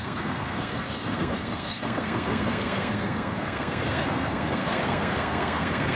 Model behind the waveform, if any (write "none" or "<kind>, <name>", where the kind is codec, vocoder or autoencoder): codec, SNAC